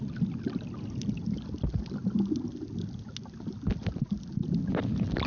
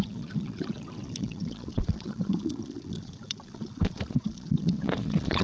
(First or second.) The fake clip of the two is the second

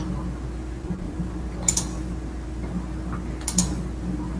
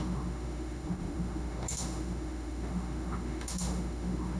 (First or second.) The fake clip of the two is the second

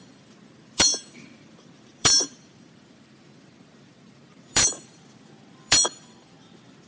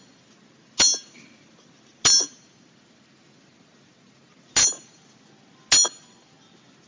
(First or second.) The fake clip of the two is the first